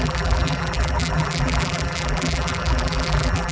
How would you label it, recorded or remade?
remade